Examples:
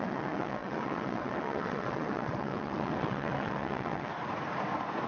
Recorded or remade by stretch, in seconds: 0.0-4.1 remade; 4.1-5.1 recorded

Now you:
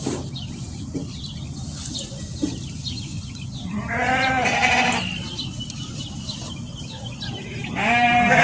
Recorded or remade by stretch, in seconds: 0.0-8.4 recorded

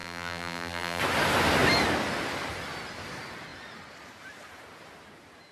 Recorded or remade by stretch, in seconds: 0.0-1.0 remade; 1.0-5.5 recorded